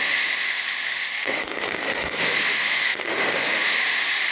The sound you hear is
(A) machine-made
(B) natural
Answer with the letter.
A